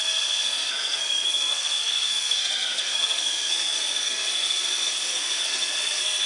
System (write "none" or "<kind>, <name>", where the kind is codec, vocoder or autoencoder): codec, SNAC